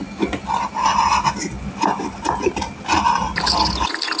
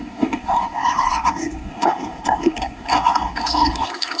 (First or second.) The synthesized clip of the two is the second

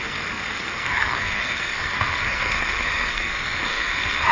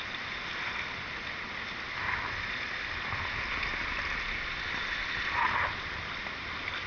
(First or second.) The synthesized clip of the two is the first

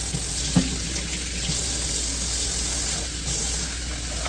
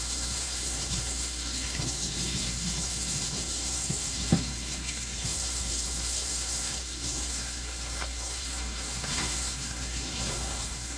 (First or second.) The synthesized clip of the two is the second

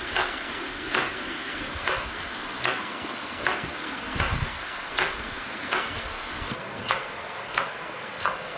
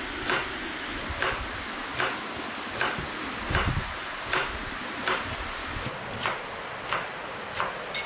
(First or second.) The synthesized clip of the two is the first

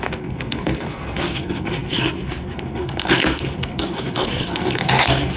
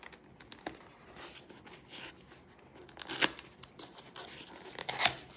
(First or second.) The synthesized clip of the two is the first